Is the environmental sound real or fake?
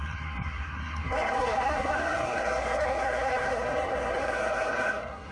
fake